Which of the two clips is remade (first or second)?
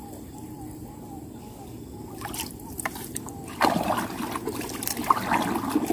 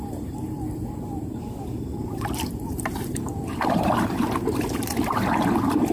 second